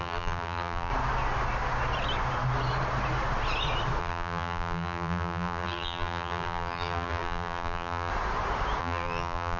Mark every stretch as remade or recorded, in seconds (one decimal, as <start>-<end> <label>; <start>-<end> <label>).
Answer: 0.0-0.9 remade; 0.9-4.0 recorded; 4.0-8.1 remade; 8.1-8.8 recorded; 8.8-9.6 remade